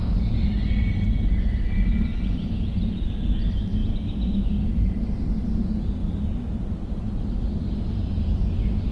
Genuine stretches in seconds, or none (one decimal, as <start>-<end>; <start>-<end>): 0.0-8.9